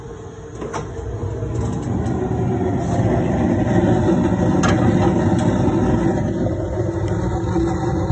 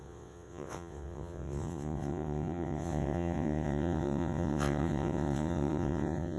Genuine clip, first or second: first